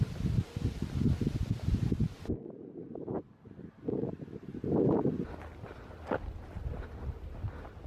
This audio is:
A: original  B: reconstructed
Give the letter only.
A